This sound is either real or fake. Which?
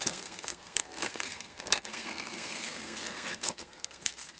fake